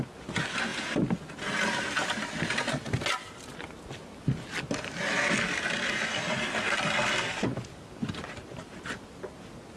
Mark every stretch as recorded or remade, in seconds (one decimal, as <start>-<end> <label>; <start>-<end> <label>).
0.0-9.8 recorded